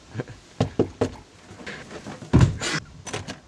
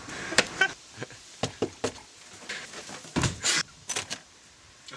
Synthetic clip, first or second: second